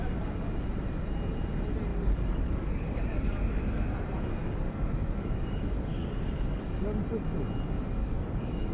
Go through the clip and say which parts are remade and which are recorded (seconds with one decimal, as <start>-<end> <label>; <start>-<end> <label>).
0.0-1.9 recorded; 1.9-3.6 remade; 3.6-4.4 recorded; 4.4-6.7 remade; 6.7-8.0 recorded; 8.0-8.7 remade